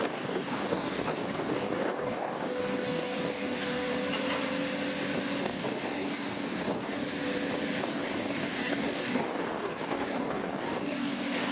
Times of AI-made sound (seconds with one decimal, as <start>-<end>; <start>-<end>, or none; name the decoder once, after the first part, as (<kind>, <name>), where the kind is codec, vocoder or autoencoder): 0.0-3.9 (codec, DAC); 5.4-7.0; 7.8-11.5